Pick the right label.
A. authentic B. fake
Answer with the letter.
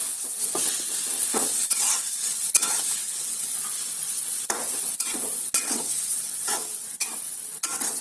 B